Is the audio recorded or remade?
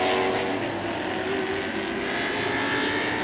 recorded